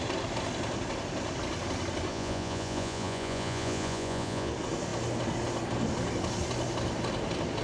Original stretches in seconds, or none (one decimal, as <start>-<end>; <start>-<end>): 0.0-2.1; 4.5-7.6